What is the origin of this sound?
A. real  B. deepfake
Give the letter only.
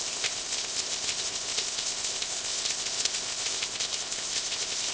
B